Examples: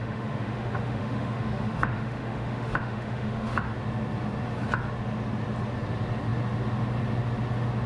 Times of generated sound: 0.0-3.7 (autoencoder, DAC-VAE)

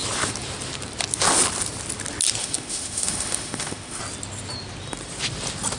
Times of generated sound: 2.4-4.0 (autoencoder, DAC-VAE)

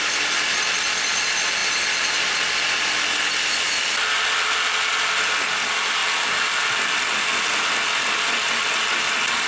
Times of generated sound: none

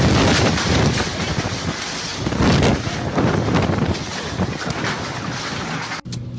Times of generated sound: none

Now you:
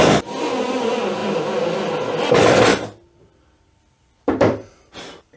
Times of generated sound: 2.7-4.9 (vocoder, BigVGAN v2)

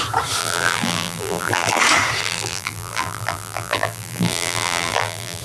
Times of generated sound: 0.4-1.8 (vocoder, BigVGAN v2); 2.2-5.4

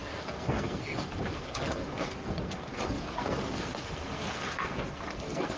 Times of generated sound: 0.0-5.6 (codec, SNAC)